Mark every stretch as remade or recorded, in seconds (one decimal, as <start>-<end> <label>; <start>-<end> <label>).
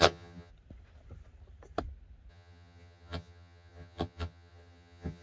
0.0-0.5 remade; 0.5-2.3 recorded; 2.3-5.2 remade